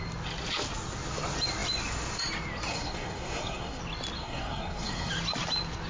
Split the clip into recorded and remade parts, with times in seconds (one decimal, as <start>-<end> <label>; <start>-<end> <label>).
0.0-2.7 recorded; 2.7-3.8 remade; 3.8-4.2 recorded; 4.2-5.1 remade; 5.1-5.9 recorded